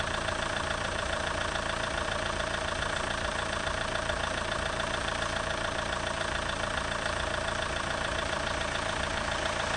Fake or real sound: fake